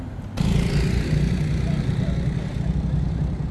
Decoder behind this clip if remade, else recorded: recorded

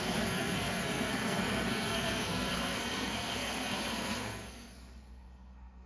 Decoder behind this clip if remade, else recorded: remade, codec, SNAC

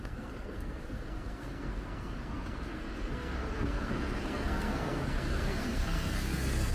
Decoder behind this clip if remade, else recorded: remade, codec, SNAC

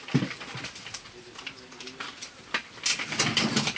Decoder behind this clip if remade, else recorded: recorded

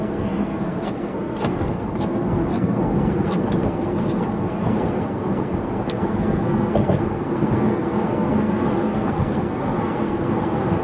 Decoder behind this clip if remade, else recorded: remade, codec, SNAC